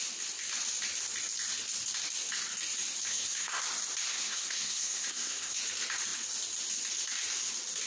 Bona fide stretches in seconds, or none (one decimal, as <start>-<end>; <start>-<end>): 0.0-3.1; 3.6-4.1; 5.6-7.9